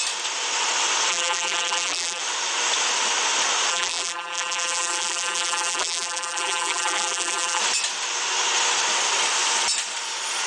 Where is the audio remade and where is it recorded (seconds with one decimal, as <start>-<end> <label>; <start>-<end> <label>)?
0.0-1.1 recorded; 1.1-2.2 remade; 2.2-3.7 recorded; 3.7-7.6 remade; 7.6-10.5 recorded